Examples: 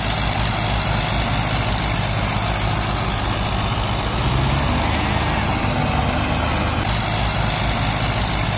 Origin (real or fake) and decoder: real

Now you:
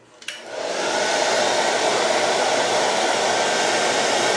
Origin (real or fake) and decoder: real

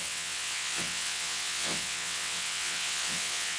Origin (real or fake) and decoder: fake, vocoder, WaveNeXt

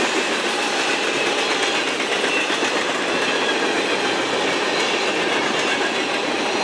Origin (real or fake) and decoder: real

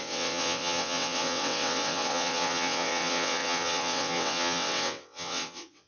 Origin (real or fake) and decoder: fake, vocoder, WaveNeXt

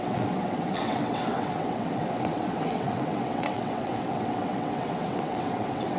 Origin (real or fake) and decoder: fake, vocoder, WaveNeXt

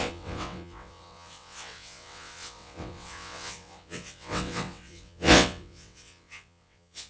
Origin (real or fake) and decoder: fake, vocoder, WaveNeXt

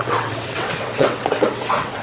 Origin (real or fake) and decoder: fake, vocoder, WaveNeXt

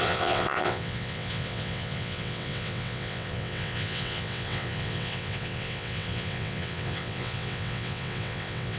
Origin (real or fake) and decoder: fake, vocoder, WaveNeXt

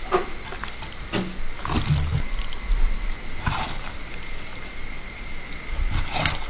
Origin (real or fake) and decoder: real